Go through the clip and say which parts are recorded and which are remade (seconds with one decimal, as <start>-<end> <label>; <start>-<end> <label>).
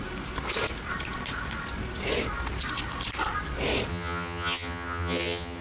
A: 0.0-3.9 recorded; 3.9-5.6 remade